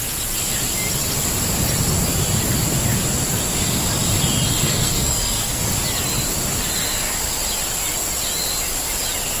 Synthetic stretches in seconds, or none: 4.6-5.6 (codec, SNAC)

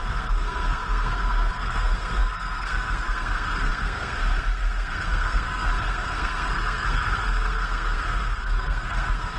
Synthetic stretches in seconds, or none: 0.0-9.4 (codec, SNAC)

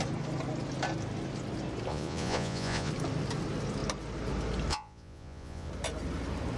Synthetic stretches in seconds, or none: 1.9-2.9 (vocoder, Vocos); 4.7-5.7

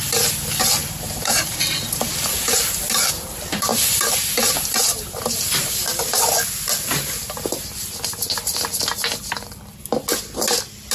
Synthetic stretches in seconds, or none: 0.8-2.6 (vocoder, BigVGAN v2); 3.7-5.7